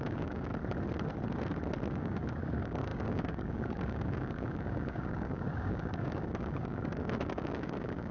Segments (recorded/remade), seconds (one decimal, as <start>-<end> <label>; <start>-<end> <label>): 0.0-0.5 remade; 0.5-1.9 recorded; 1.9-8.1 remade